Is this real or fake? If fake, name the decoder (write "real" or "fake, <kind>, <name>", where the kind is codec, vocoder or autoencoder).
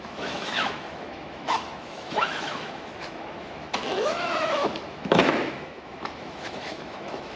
fake, autoencoder, DAC-VAE